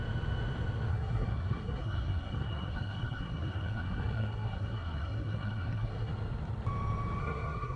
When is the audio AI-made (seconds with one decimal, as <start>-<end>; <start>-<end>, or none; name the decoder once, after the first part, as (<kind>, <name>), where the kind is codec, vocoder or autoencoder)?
0.9-6.1 (codec, SNAC); 7.2-7.8